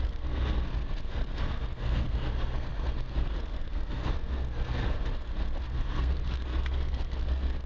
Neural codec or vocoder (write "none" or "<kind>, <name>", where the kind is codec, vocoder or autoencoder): codec, SNAC